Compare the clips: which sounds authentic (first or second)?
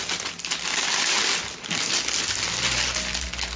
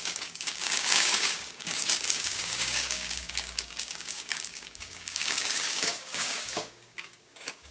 first